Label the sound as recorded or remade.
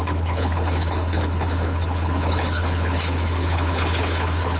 remade